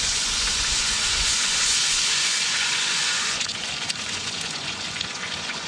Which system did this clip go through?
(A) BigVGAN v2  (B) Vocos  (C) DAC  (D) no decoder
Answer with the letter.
B